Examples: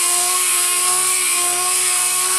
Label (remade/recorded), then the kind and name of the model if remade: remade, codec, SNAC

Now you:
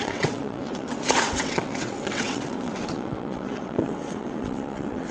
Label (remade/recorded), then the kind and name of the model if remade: remade, vocoder, WaveNeXt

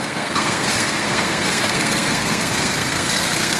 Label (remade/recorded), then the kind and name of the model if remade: remade, codec, SNAC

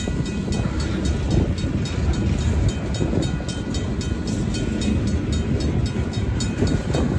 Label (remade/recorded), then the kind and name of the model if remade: recorded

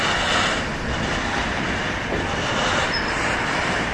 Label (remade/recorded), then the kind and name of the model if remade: remade, vocoder, BigVGAN v2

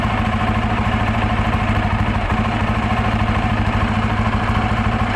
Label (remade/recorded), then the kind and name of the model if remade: remade, vocoder, BigVGAN v2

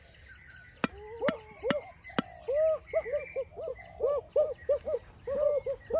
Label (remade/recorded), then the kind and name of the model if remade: recorded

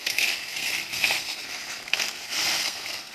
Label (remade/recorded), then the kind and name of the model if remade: remade, codec, SNAC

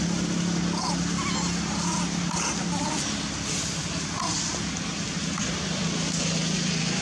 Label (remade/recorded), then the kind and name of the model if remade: recorded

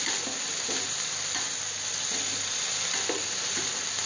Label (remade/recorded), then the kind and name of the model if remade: recorded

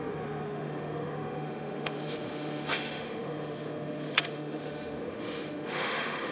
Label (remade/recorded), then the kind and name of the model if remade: remade, autoencoder, DAC-VAE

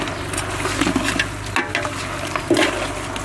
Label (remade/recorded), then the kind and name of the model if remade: recorded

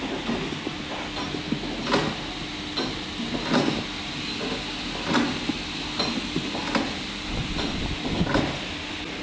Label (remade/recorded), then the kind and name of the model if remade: recorded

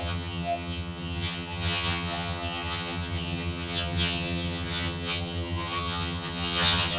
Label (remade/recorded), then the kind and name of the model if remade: remade, vocoder, HiFi-GAN